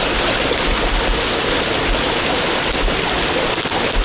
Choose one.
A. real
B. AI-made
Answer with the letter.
A